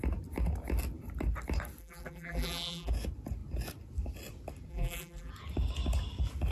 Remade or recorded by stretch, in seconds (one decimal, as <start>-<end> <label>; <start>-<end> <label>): 0.0-1.8 recorded; 1.8-2.9 remade; 2.9-4.7 recorded; 4.7-5.3 remade; 5.3-6.5 recorded